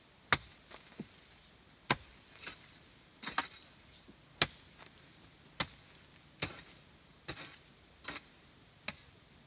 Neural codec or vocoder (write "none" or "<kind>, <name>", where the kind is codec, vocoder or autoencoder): none